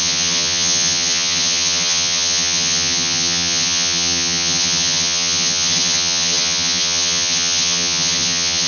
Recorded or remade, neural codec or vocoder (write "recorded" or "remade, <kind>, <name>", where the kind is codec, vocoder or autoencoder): remade, vocoder, HiFi-GAN